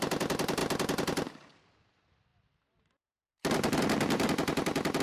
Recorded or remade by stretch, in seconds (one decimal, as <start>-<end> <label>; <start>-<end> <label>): 0.0-5.0 recorded